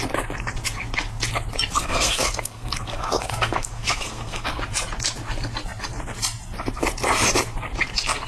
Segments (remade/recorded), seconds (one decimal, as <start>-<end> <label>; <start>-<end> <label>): 0.0-1.8 recorded; 1.8-4.6 remade; 4.6-8.3 recorded